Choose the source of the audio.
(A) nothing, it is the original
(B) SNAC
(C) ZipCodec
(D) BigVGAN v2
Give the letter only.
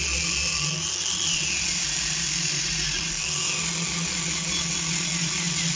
A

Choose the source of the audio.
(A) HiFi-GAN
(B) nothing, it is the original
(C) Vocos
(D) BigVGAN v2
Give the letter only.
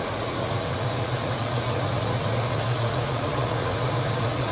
C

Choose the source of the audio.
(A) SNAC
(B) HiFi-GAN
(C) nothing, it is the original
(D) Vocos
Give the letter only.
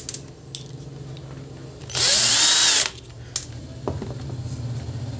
C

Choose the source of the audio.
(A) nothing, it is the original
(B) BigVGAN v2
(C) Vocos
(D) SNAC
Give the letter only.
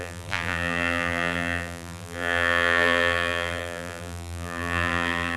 B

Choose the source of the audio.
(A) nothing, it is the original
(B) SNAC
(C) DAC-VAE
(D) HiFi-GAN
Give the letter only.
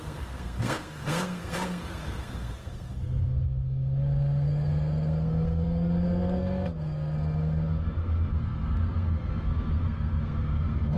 B